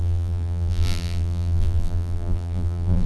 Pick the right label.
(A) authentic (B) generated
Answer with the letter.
B